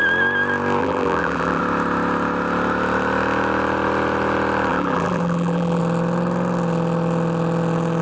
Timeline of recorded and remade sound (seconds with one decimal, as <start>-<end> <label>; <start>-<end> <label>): 0.0-0.8 recorded; 0.8-1.6 remade; 1.6-4.7 recorded; 4.7-5.8 remade; 5.8-8.0 recorded